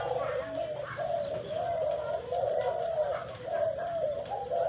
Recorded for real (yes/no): yes